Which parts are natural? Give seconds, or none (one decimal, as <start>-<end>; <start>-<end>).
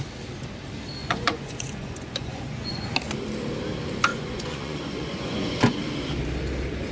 0.0-1.0; 2.9-4.1; 5.8-6.9